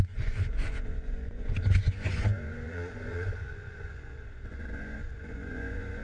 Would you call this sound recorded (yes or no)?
no